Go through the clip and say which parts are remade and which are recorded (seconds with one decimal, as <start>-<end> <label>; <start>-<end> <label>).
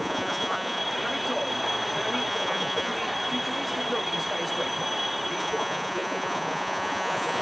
0.0-0.8 remade; 0.8-2.3 recorded; 2.3-2.9 remade; 2.9-5.4 recorded; 5.4-7.4 remade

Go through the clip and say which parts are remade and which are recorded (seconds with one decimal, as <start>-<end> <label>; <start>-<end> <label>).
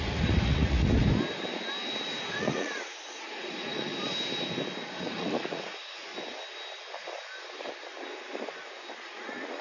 0.0-0.9 remade; 0.9-2.4 recorded; 2.4-3.9 remade; 3.9-5.0 recorded; 5.0-6.1 remade; 6.1-9.0 recorded; 9.0-9.6 remade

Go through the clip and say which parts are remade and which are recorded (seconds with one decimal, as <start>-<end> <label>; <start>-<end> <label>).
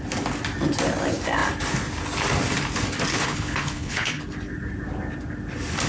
0.0-3.1 recorded; 3.1-4.2 remade; 4.2-5.9 recorded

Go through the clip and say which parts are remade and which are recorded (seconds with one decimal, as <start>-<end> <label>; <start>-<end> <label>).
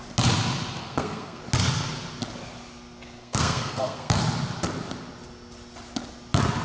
0.0-0.8 recorded; 0.8-1.4 remade; 1.4-3.2 recorded; 3.2-4.2 remade; 4.2-6.6 recorded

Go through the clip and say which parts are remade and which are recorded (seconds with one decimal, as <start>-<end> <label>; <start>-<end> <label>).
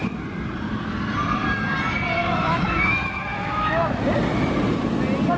0.0-2.2 recorded; 2.2-4.0 remade; 4.0-5.4 recorded